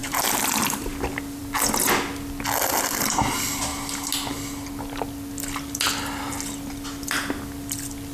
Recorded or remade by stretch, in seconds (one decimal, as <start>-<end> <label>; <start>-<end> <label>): 0.0-0.9 remade; 0.9-8.1 recorded